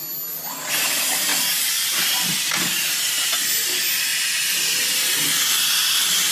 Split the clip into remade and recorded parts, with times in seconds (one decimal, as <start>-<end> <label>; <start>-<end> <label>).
0.0-6.3 recorded